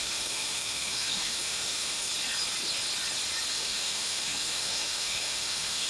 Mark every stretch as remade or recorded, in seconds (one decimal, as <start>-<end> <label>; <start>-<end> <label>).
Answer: 0.0-2.1 remade; 2.1-3.5 recorded; 3.5-5.9 remade